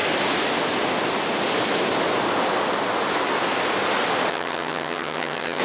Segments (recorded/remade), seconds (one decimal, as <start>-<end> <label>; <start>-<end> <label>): 0.0-4.3 recorded; 4.3-5.6 remade